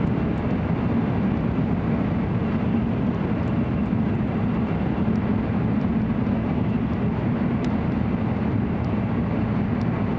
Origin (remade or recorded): recorded